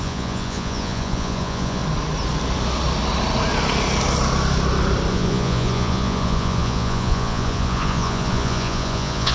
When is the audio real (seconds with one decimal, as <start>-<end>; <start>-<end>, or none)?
1.8-5.1